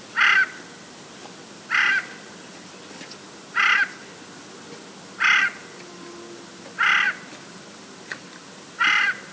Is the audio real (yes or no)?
yes